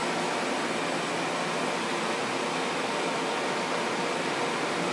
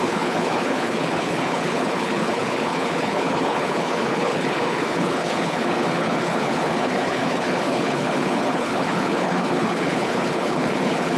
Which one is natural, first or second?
first